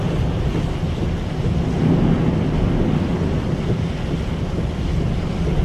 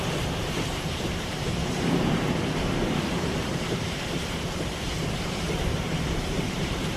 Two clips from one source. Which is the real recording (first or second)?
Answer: first